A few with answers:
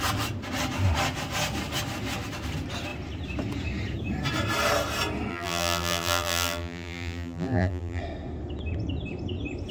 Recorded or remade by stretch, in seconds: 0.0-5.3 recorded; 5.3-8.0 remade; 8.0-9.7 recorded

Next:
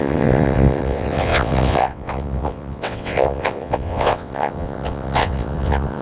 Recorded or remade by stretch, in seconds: 0.0-6.0 remade

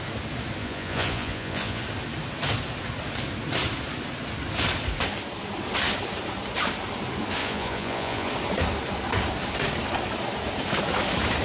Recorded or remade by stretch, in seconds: 0.0-0.6 recorded; 0.6-1.8 remade; 1.8-7.4 recorded; 7.4-8.3 remade; 8.3-11.4 recorded

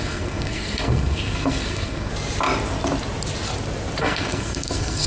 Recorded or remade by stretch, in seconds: 0.0-2.1 remade; 2.1-4.0 recorded; 4.0-5.1 remade

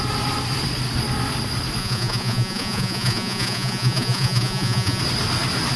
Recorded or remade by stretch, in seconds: 0.0-1.8 recorded; 1.8-5.0 remade; 5.0-5.8 recorded